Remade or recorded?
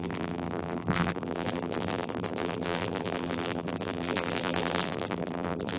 remade